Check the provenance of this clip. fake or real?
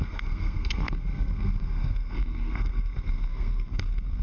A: fake